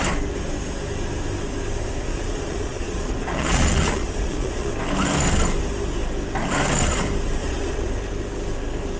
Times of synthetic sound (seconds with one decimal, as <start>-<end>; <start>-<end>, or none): 2.1-4.7; 7.4-7.9